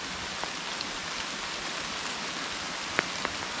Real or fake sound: real